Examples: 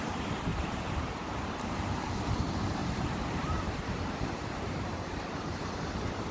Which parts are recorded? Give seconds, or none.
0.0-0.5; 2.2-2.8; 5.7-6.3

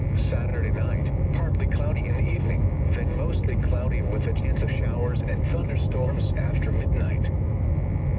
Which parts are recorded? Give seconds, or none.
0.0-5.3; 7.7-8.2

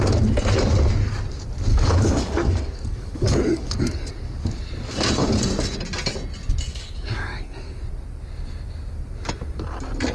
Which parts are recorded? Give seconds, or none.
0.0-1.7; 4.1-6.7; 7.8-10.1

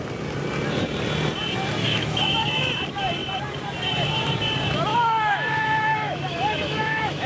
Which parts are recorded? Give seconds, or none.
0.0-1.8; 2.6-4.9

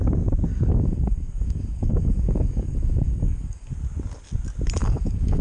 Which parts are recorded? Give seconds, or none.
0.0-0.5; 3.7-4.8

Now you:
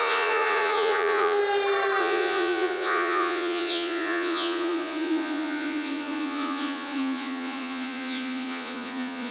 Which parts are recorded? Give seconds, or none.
1.4-2.0